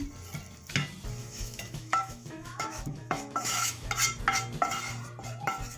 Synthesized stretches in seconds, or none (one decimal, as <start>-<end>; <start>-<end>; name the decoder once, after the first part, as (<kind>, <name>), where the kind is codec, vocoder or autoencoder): 1.2-3.9 (autoencoder, DAC-VAE)